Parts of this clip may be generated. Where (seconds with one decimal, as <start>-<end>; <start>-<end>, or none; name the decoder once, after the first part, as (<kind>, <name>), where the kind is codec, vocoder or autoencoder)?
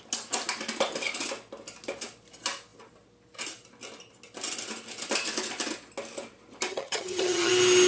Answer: 6.7-7.5 (vocoder, HiFi-GAN)